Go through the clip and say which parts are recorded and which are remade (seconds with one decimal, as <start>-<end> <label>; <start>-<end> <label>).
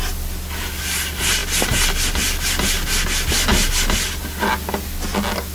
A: 0.0-5.5 recorded